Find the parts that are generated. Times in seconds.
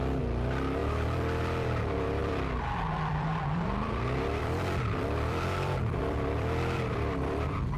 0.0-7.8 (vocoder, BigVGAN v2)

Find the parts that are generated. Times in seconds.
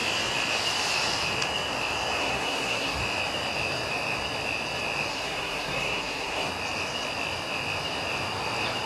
2.2-3.0 (codec, SNAC); 5.1-6.5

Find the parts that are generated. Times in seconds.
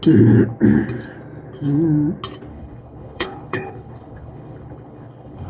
2.5-5.5 (codec, HILCodec)